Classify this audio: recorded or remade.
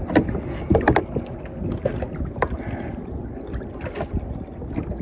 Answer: recorded